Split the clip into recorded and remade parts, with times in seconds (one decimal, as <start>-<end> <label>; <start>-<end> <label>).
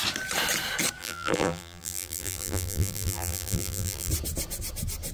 0.0-1.0 recorded; 1.0-4.1 remade; 4.1-5.1 recorded